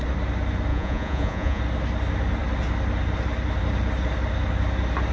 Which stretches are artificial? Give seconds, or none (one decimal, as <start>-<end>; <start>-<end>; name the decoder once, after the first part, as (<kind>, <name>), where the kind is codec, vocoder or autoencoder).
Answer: 0.7-1.6 (vocoder, Vocos)